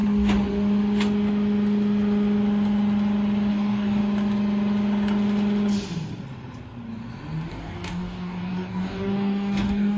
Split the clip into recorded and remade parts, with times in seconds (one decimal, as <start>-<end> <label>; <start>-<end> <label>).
0.0-3.5 recorded; 3.5-4.0 remade; 4.0-7.5 recorded; 7.5-10.0 remade